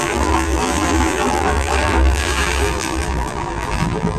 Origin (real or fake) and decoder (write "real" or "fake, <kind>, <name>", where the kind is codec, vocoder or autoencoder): fake, vocoder, BigVGAN v2